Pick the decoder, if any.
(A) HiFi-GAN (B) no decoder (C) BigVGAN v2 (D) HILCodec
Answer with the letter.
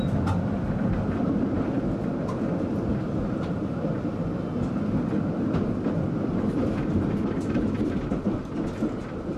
B